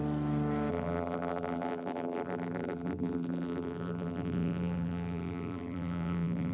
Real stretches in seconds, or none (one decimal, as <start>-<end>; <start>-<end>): 0.0-0.7